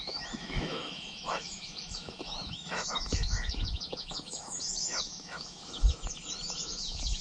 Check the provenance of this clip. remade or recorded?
remade